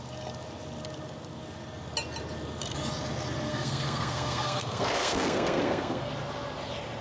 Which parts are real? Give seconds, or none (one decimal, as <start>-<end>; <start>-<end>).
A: 0.0-3.5; 6.1-7.0

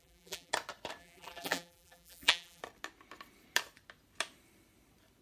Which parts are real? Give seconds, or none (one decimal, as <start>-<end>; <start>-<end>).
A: 0.5-1.0; 2.6-5.2

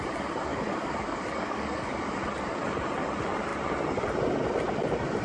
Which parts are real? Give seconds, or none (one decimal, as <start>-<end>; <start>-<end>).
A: 0.0-0.5; 2.2-5.2

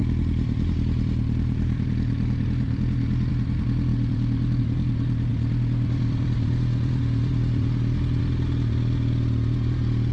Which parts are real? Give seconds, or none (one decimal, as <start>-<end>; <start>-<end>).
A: 3.3-3.9; 4.6-5.3; 8.2-10.1